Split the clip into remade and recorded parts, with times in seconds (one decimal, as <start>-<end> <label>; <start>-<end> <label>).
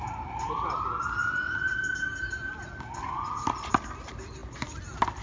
0.0-5.2 recorded